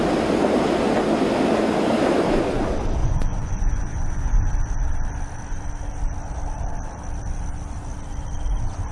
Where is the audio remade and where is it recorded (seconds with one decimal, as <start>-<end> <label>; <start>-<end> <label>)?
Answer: 0.0-3.0 recorded; 3.0-4.5 remade; 4.5-8.9 recorded